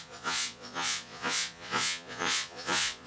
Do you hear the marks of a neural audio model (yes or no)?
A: yes